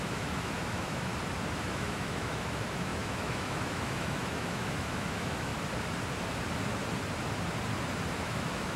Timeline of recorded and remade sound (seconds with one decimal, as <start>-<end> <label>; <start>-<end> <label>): 0.0-1.1 remade; 1.1-1.6 recorded; 1.6-5.5 remade; 5.5-8.2 recorded; 8.2-8.8 remade